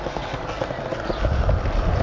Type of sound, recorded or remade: recorded